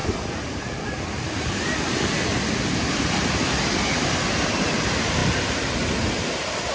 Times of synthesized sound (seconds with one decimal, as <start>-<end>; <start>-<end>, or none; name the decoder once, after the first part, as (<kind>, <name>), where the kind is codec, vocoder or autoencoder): none